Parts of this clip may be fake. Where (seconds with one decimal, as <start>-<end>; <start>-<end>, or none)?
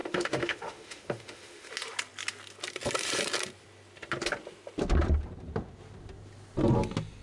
0.0-1.7